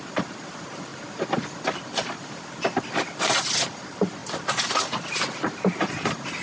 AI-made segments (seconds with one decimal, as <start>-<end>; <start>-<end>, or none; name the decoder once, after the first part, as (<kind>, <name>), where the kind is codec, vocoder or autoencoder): none